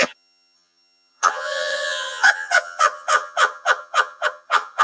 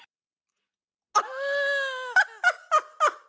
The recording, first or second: second